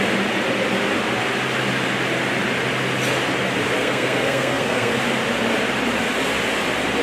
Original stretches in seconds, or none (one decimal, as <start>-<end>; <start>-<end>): 0.0-3.8; 4.9-7.0